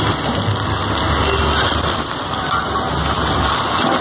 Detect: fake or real real